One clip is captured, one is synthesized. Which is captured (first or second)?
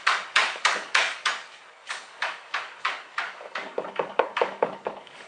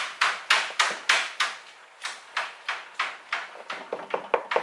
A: second